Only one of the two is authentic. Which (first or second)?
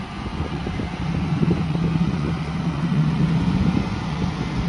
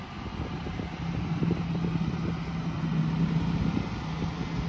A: second